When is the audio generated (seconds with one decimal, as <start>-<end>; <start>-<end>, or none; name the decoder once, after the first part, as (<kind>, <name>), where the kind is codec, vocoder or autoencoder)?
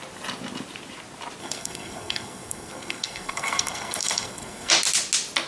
1.4-4.7 (codec, SNAC)